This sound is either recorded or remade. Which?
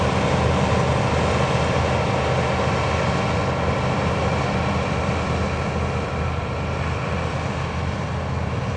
recorded